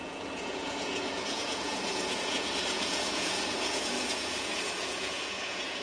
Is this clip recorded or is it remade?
remade